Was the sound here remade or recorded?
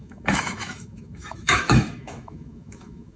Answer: remade